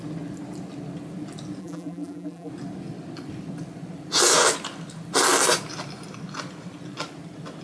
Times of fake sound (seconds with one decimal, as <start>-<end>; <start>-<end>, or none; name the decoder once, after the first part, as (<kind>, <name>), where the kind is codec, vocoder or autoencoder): 1.6-2.5 (vocoder, BigVGAN v2)

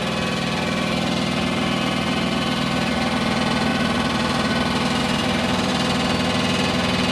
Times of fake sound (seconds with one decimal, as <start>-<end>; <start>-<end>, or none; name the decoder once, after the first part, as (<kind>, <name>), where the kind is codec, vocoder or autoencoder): 3.7-4.5 (vocoder, BigVGAN v2); 5.0-5.7

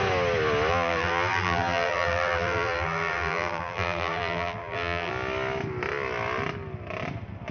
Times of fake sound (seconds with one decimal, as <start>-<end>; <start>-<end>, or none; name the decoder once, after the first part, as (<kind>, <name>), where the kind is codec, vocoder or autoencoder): 0.7-5.1 (vocoder, BigVGAN v2)

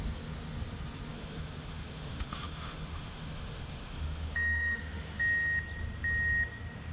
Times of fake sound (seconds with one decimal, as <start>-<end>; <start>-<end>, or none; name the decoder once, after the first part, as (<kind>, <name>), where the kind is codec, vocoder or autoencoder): 1.1-5.2 (autoencoder, DAC-VAE)

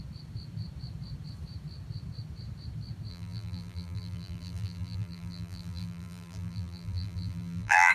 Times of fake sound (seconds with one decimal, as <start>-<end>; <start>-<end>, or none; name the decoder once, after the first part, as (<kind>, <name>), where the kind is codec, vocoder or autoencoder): 3.1-7.9 (vocoder, BigVGAN v2)

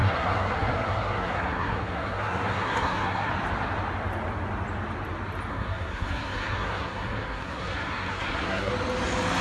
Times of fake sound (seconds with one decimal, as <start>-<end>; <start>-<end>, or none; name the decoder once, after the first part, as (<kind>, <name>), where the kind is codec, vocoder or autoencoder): 0.0-3.3 (codec, SNAC); 5.5-8.7

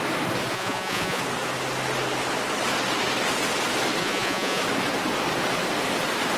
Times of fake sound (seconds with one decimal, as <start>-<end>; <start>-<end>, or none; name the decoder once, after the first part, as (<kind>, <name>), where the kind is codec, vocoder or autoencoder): 0.5-1.2 (vocoder, Vocos); 4.0-4.6

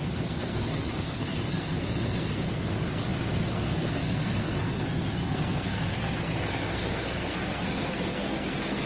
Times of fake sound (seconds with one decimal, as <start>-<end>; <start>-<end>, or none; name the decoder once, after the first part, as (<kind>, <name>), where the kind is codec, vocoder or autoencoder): 0.0-8.9 (codec, SNAC)